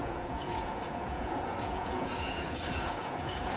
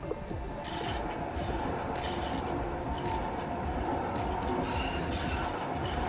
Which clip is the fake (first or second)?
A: first